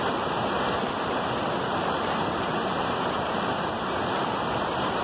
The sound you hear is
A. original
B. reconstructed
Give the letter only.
A